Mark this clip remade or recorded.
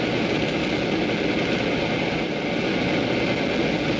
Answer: recorded